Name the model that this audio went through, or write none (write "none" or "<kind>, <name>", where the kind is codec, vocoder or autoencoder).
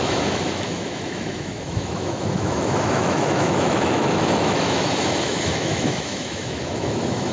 autoencoder, DAC-VAE